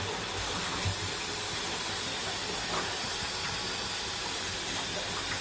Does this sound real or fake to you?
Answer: real